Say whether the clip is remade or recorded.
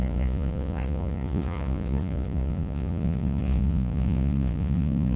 remade